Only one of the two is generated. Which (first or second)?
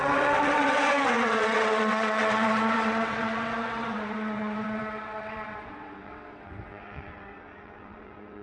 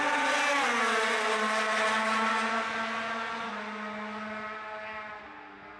first